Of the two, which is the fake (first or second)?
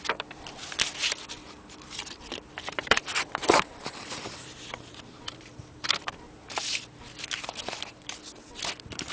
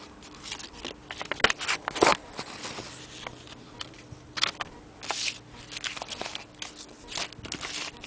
first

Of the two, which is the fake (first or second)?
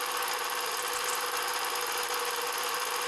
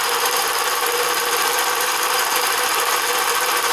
second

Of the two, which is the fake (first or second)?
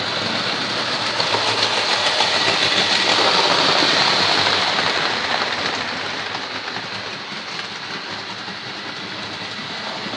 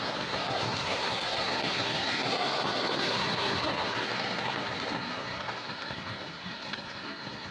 second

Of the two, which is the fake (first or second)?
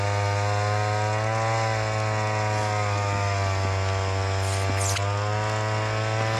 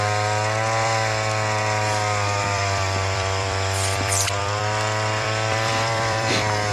second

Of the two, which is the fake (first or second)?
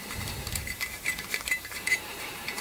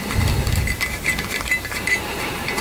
first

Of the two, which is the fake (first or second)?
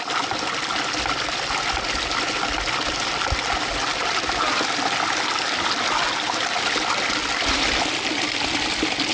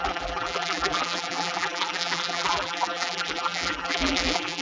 second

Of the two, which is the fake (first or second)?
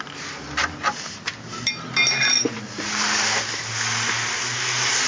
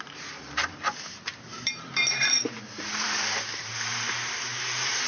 second